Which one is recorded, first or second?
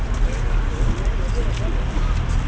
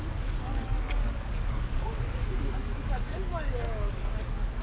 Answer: first